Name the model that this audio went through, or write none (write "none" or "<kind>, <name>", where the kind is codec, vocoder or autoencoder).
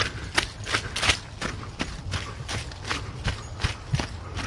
none